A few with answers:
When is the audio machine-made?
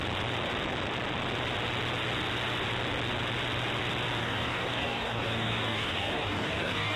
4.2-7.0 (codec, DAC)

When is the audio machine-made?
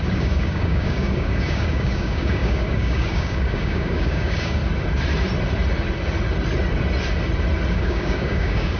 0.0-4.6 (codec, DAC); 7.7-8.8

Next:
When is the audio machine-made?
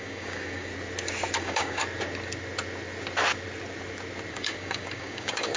0.0-0.7 (codec, DAC); 1.4-1.8; 4.3-5.6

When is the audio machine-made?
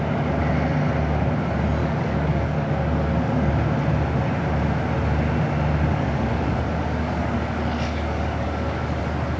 1.8-3.5 (codec, DAC); 5.9-9.0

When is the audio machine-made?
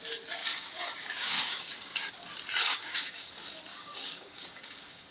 0.4-2.1 (codec, DAC); 2.7-3.3; 3.7-5.1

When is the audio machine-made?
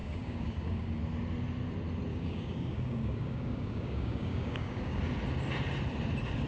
0.0-1.0 (codec, DAC); 2.1-5.0